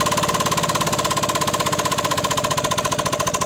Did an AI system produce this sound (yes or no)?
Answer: no